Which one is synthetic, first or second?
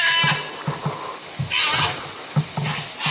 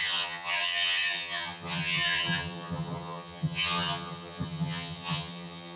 second